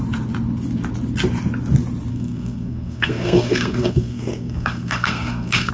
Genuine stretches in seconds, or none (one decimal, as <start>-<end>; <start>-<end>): 0.0-2.1